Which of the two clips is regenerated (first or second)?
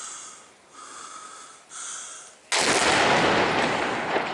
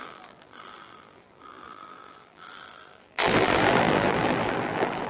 second